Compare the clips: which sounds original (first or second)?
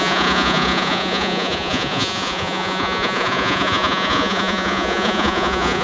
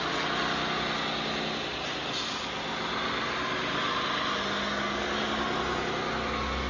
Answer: second